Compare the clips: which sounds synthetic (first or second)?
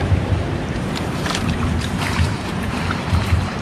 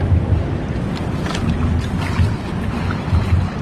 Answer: first